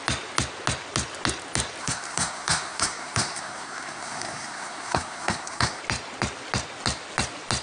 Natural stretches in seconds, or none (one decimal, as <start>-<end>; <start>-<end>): 0.0-1.8; 5.8-7.6